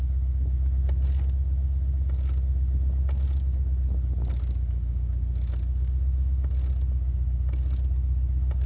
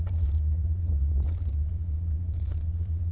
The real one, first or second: first